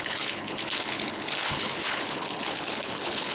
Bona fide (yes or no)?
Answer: no